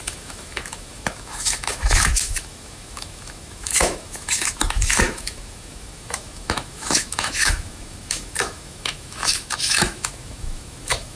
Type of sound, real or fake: fake